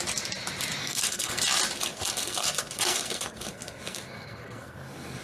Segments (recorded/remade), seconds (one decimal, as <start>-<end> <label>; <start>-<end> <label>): 0.0-0.8 recorded; 0.8-1.4 remade; 1.4-1.9 recorded; 1.9-5.2 remade